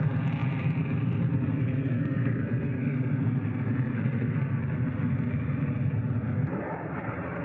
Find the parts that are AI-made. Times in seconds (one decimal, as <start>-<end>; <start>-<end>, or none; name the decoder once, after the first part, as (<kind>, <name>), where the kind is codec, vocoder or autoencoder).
1.5-3.2 (codec, SNAC); 3.9-4.6